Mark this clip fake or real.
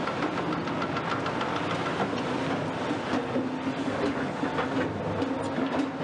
real